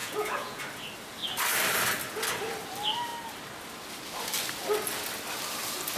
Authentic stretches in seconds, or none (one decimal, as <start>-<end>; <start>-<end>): 0.6-6.0